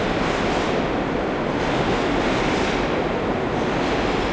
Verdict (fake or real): real